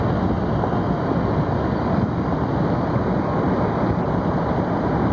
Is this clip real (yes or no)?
yes